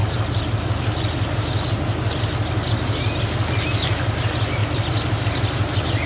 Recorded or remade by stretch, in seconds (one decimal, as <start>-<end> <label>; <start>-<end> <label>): 0.0-6.1 recorded